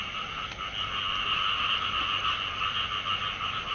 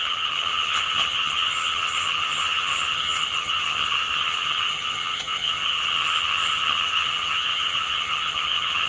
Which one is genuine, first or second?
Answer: first